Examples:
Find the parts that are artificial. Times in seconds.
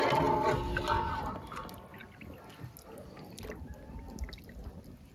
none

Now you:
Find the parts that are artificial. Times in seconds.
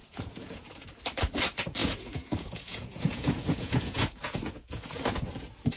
0.0-1.0; 1.8-5.3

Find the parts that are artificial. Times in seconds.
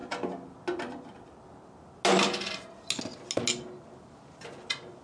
none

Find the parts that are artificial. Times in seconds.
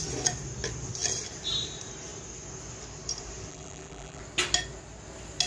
3.5-4.2